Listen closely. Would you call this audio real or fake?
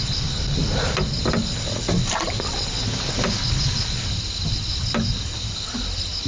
real